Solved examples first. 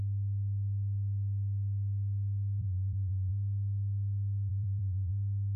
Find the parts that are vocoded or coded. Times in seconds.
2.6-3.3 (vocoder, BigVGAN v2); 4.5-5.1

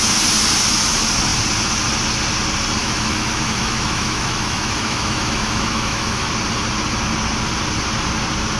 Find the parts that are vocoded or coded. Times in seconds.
2.8-6.3 (autoencoder, DAC-VAE)

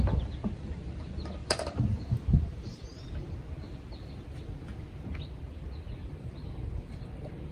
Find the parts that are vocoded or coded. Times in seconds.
1.4-3.3 (vocoder, BigVGAN v2); 6.0-7.1

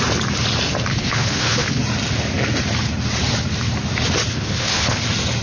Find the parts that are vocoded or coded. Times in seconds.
0.9-1.8 (codec, HILCodec); 4.3-5.0